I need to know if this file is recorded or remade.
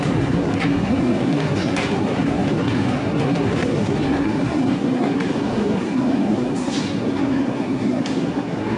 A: remade